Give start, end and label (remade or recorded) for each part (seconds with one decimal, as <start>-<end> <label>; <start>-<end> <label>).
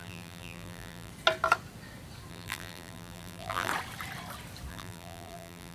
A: 0.0-1.1 remade; 1.1-2.3 recorded; 2.3-3.7 remade; 3.7-4.7 recorded; 4.7-5.7 remade